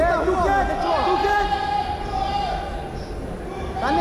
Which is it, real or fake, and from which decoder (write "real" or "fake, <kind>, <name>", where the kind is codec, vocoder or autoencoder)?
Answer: real